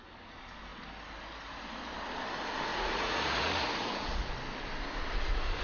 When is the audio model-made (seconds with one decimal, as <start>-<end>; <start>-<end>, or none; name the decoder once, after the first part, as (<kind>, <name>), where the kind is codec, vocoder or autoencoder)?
2.7-4.3 (vocoder, Vocos)